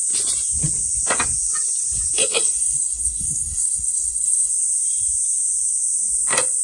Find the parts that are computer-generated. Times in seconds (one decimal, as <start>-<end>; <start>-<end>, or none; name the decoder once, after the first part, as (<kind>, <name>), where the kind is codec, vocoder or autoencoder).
2.2-4.5 (codec, SNAC)